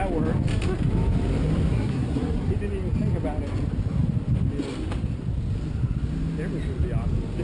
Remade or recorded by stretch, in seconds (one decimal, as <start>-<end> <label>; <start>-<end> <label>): 0.0-1.7 recorded; 1.7-2.5 remade; 2.5-7.4 recorded